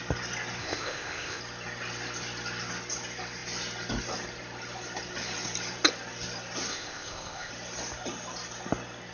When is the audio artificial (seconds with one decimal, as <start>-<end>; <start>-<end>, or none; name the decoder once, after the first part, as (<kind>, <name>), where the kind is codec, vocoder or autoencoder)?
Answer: 0.6-1.4 (codec, ZipCodec); 6.7-7.5